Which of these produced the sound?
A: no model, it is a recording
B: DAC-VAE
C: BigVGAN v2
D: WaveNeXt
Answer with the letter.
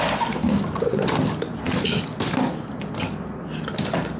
A